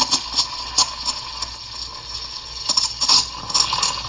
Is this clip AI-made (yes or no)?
no